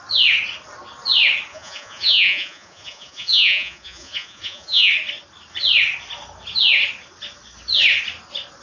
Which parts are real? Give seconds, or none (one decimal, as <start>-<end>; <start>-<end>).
0.0-1.5; 4.9-8.6